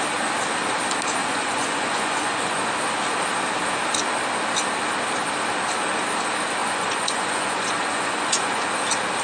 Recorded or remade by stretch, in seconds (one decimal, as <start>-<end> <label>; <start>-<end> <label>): 0.0-1.2 recorded; 1.2-2.7 remade; 2.7-6.6 recorded; 6.6-8.7 remade; 8.7-9.2 recorded